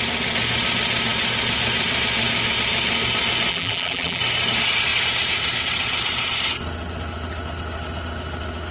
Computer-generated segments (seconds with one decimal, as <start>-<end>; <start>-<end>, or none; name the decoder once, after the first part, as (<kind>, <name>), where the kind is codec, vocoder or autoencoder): 3.5-4.2 (vocoder, BigVGAN v2)